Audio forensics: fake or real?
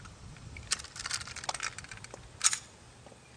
real